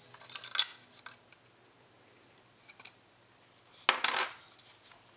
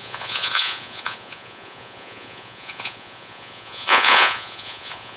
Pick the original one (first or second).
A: first